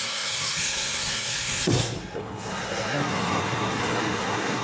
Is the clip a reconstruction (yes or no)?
yes